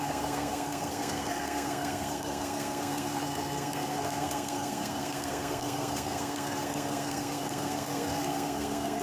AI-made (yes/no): yes